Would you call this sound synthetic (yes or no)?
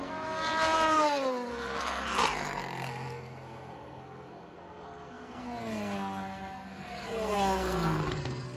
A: yes